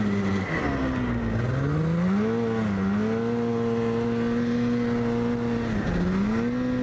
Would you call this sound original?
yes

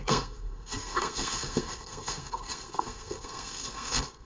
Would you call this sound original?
no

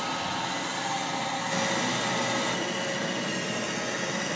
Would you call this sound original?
yes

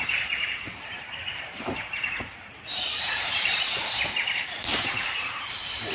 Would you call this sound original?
no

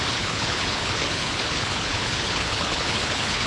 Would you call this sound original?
no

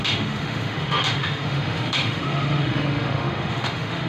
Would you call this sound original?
no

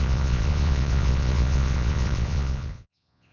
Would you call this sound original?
no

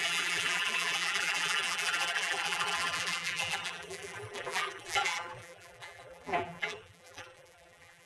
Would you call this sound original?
no